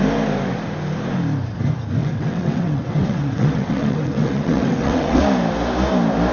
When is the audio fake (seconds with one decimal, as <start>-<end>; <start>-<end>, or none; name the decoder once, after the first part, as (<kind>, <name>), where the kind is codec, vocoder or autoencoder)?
2.0-5.2 (vocoder, WaveNeXt)